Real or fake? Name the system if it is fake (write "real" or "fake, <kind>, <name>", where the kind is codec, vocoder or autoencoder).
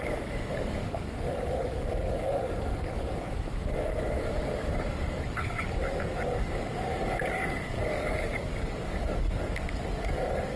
fake, codec, DAC